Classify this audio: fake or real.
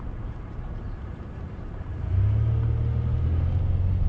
real